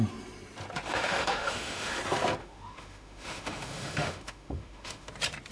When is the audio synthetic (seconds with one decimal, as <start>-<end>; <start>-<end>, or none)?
0.9-2.0; 2.4-5.1

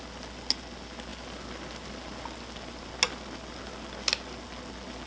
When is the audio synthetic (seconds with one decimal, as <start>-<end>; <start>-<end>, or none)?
none

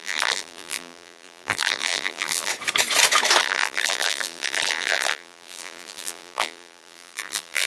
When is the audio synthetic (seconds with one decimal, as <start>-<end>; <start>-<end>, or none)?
0.0-2.5; 3.4-7.7